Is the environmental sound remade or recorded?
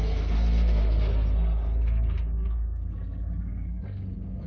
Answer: remade